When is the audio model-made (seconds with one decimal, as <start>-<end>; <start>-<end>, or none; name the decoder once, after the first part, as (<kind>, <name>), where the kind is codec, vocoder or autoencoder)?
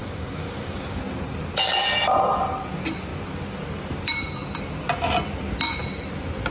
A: 0.0-1.0 (codec, DAC)